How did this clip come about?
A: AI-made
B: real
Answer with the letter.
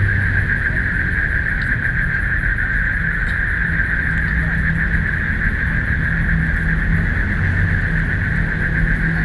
B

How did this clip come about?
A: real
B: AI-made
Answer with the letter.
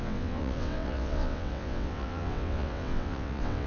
B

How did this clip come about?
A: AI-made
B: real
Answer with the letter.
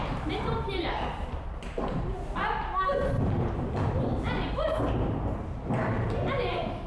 B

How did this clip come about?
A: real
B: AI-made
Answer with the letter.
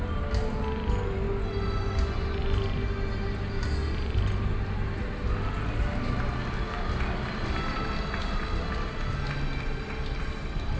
A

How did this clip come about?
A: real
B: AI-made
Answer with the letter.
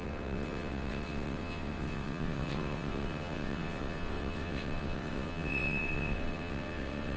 B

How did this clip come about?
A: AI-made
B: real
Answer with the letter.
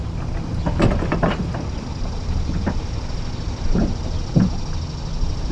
B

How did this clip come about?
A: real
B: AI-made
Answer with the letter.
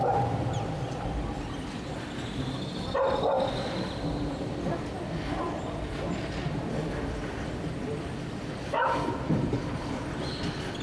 A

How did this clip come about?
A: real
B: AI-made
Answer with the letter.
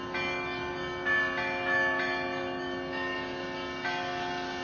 A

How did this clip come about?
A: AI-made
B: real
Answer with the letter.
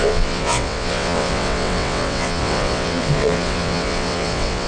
A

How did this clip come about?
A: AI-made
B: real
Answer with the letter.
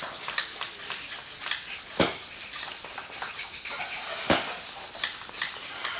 B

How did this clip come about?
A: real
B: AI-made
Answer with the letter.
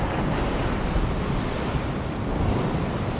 A